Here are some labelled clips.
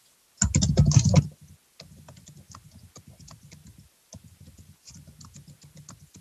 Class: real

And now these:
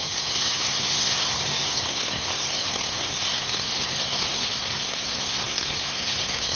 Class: fake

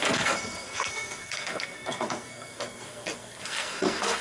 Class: fake